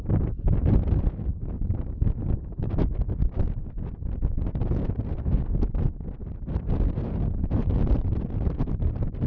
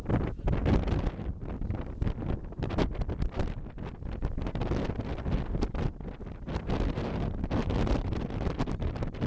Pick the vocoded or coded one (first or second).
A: first